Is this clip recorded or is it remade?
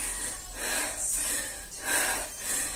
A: recorded